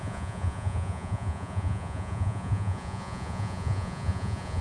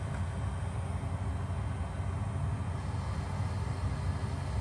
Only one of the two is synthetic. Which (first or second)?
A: first